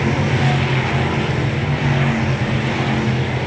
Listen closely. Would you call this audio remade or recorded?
recorded